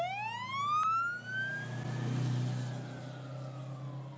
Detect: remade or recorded recorded